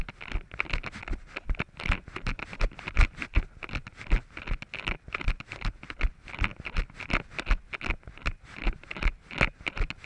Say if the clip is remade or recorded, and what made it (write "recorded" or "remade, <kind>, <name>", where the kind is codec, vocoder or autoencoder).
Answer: recorded